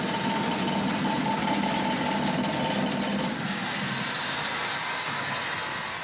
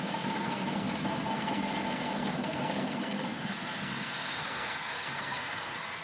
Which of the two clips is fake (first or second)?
second